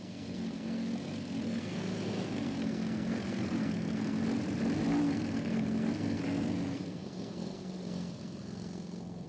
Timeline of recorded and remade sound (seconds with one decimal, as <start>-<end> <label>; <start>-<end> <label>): 0.0-4.2 remade; 4.2-5.0 recorded; 5.0-9.3 remade

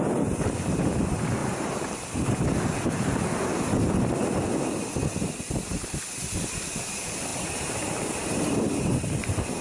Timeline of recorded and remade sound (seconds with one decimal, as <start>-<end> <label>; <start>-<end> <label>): 0.0-9.6 recorded